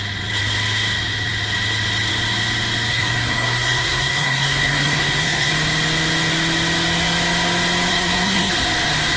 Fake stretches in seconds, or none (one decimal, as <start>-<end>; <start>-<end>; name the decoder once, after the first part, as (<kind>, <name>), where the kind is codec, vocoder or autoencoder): 2.9-5.5 (codec, SNAC); 7.9-8.5